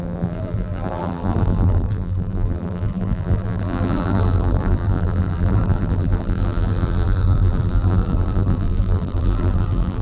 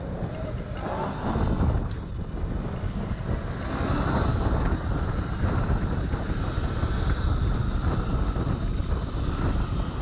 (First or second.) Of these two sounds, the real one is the second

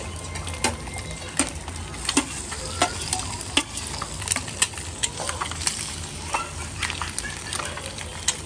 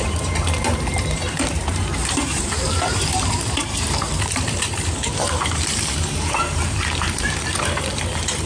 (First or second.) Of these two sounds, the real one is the first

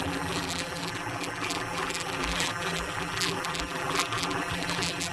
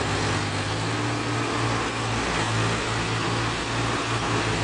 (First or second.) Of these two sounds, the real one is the second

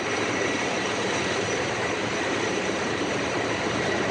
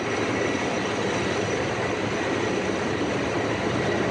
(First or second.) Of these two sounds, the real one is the second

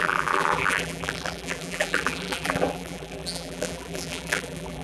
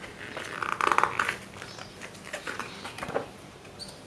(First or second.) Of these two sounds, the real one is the second